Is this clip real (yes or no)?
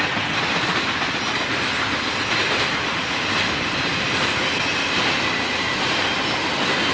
yes